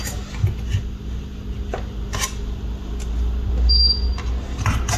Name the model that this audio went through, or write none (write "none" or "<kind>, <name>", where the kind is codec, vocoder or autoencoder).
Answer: none